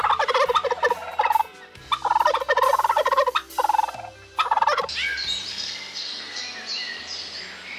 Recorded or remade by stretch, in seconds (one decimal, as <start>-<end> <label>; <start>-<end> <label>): 0.0-5.5 recorded; 5.5-6.4 remade; 6.4-7.8 recorded